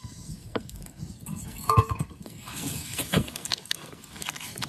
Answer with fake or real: fake